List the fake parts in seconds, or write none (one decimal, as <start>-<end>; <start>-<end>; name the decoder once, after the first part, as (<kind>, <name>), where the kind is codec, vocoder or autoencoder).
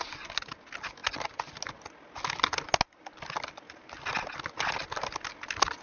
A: none